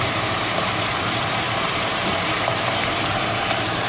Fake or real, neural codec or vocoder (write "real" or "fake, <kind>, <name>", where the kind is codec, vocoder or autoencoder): fake, vocoder, BigVGAN v2